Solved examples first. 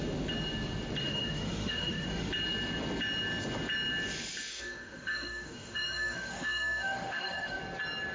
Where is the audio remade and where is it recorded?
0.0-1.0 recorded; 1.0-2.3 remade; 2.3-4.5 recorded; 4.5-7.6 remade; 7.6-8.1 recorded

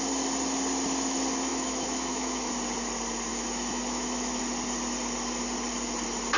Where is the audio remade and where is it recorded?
0.0-1.5 recorded; 1.5-2.5 remade; 2.5-3.3 recorded; 3.3-4.4 remade; 4.4-6.4 recorded